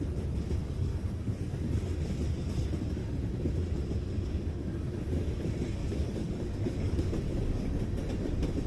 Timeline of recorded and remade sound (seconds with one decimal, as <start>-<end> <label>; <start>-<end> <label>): 0.0-0.6 recorded; 0.6-1.8 remade; 1.8-3.0 recorded; 3.0-3.5 remade; 3.5-5.8 recorded; 5.8-7.6 remade; 7.6-8.7 recorded

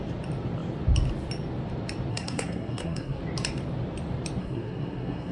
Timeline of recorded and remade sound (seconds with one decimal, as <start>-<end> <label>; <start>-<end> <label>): 0.0-2.1 recorded; 2.1-3.2 remade; 3.2-4.4 recorded; 4.4-5.3 remade

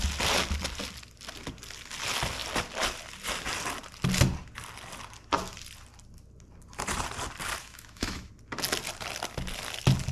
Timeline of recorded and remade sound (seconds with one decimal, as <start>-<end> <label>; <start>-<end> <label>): 0.0-7.6 recorded; 7.6-8.3 remade; 8.3-10.1 recorded

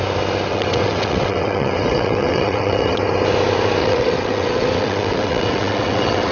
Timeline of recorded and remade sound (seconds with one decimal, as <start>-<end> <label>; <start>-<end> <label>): 0.0-0.5 recorded; 0.5-3.0 remade; 3.0-3.8 recorded; 3.8-6.3 remade

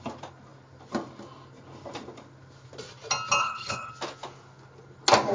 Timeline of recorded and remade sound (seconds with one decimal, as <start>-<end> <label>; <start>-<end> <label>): 0.0-3.4 recorded; 3.4-3.9 remade; 3.9-5.3 recorded

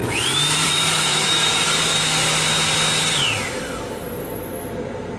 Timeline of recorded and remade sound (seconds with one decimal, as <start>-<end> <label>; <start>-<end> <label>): 0.0-0.6 recorded; 0.6-1.9 remade; 1.9-5.2 recorded